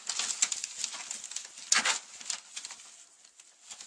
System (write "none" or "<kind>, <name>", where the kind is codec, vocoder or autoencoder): none